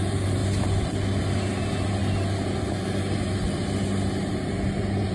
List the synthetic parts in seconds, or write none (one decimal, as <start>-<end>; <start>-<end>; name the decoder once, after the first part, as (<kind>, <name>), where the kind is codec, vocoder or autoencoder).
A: none